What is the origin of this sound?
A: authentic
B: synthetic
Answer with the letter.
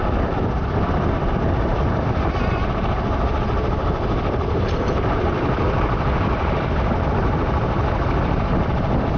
B